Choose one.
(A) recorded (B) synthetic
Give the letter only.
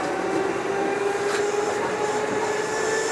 A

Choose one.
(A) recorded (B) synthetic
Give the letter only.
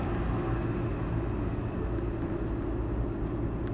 A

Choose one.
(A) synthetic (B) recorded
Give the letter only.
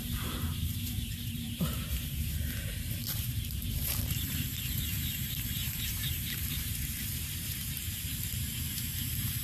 A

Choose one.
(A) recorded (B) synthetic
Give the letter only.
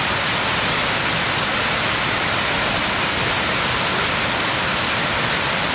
A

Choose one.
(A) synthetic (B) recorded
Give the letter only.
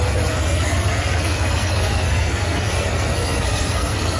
A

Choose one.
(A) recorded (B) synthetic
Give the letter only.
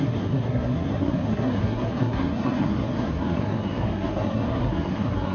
B